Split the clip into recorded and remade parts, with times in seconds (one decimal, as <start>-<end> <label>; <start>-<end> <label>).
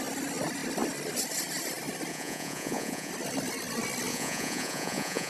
0.0-2.1 recorded; 2.1-3.1 remade; 3.1-4.1 recorded; 4.1-5.3 remade